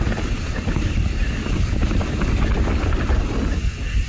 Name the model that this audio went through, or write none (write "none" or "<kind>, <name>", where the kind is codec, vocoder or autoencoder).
none